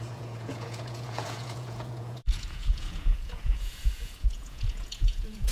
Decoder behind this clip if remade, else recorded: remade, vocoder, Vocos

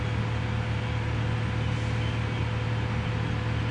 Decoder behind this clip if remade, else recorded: recorded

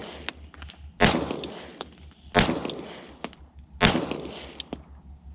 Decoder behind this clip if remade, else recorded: recorded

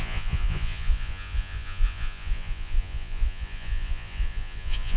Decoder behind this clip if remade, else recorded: remade, vocoder, Vocos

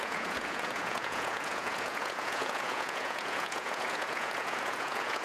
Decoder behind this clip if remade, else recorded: remade, vocoder, Vocos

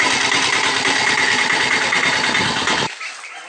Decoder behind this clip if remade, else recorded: recorded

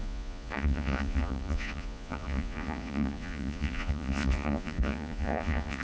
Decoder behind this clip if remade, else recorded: remade, vocoder, Vocos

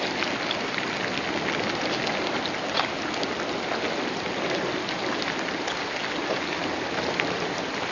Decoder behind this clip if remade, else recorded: recorded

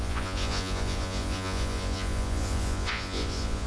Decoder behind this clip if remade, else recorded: remade, vocoder, Vocos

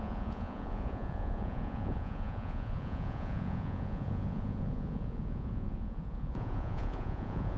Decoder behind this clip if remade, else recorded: remade, vocoder, Vocos